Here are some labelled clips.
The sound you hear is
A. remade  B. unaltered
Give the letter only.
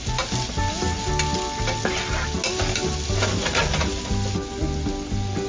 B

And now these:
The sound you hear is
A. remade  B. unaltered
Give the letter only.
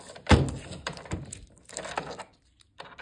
B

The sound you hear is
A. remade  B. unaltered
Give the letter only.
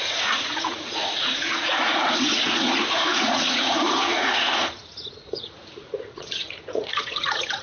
A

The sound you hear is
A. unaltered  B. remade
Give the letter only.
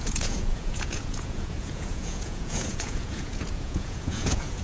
B